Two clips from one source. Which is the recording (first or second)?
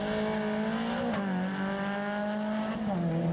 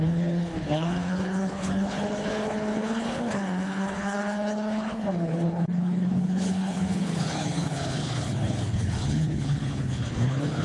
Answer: first